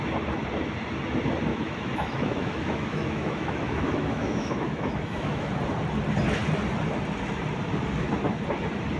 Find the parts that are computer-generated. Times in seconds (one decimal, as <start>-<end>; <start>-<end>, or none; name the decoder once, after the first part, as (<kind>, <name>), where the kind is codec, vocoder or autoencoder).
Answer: 1.5-5.5 (autoencoder, DAC-VAE)